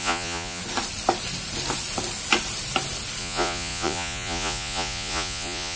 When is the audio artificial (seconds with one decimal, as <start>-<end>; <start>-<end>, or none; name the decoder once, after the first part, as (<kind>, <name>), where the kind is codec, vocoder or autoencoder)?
0.0-0.6 (vocoder, Vocos); 3.2-5.8